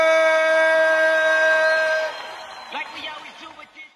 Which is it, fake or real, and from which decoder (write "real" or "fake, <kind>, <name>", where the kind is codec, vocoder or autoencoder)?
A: real